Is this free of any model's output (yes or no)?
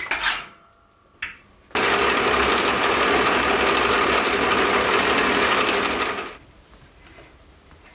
yes